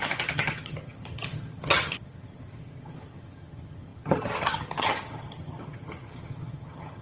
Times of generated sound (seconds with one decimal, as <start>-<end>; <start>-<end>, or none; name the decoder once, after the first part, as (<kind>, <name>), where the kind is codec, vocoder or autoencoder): 0.0-7.0 (vocoder, HiFi-GAN)